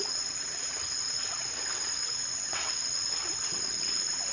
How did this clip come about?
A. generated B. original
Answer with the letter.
A